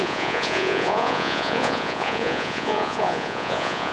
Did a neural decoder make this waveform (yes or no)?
yes